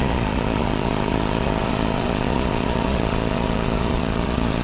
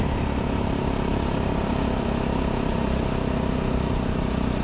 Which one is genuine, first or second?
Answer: second